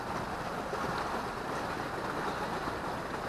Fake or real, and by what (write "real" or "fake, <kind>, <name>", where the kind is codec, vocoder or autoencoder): real